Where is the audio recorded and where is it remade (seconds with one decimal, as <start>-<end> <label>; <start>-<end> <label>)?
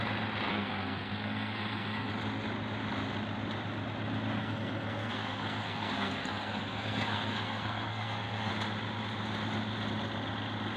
0.0-0.5 recorded; 0.5-2.1 remade; 2.1-4.4 recorded; 4.4-8.5 remade; 8.5-10.8 recorded